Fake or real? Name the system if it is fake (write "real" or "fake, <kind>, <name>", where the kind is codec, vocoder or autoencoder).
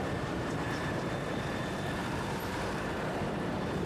fake, vocoder, BigVGAN v2